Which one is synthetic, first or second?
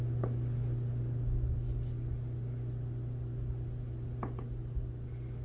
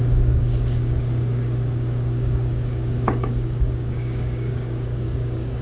second